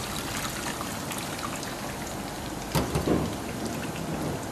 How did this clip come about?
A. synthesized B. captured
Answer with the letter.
B